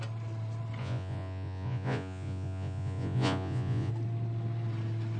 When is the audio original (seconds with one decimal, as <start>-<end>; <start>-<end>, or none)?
0.0-0.8; 3.9-5.2